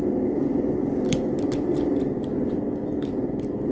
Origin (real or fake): fake